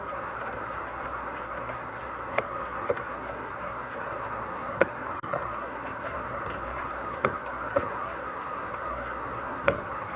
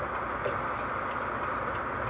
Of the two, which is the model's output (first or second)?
first